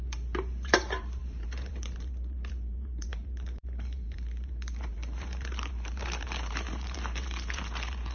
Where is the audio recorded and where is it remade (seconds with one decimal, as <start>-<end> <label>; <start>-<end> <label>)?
0.0-8.1 remade